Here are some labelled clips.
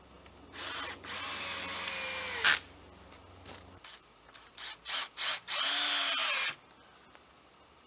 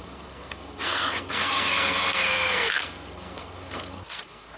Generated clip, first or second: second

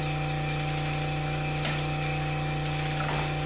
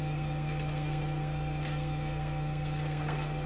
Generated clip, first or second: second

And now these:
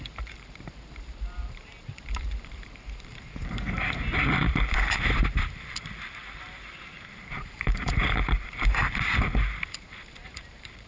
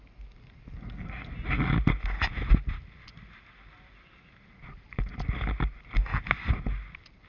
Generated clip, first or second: first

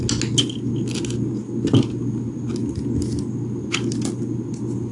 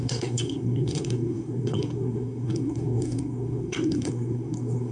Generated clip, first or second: second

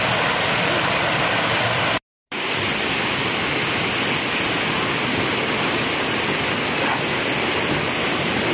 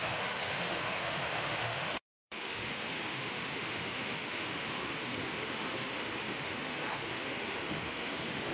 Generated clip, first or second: second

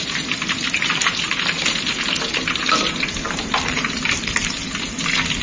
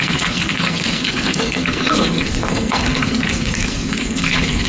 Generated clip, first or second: second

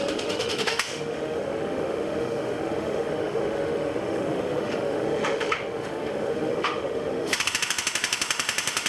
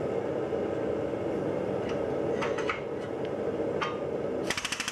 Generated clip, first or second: first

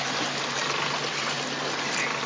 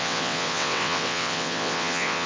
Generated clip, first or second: second